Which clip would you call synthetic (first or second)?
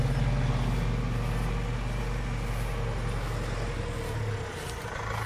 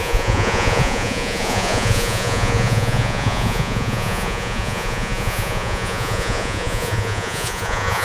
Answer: second